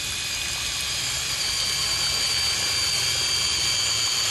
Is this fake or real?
real